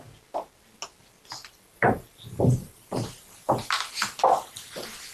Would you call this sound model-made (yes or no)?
no